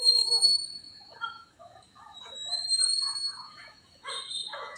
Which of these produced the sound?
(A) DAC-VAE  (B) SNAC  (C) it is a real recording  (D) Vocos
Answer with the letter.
A